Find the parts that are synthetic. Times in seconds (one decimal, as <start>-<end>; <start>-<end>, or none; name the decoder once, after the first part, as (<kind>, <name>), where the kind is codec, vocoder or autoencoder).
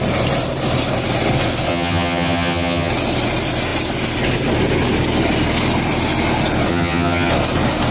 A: 1.7-2.9 (vocoder, HiFi-GAN); 6.7-7.3